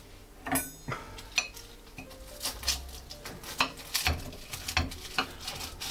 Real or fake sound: real